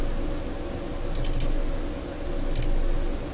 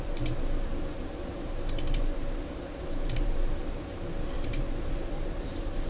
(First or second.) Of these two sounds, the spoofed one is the second